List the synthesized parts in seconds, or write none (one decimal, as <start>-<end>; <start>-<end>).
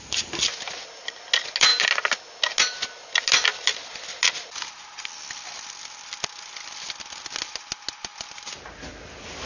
none